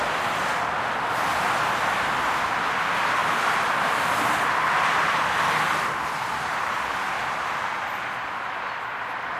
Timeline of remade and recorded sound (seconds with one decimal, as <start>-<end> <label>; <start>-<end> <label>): 0.0-9.4 recorded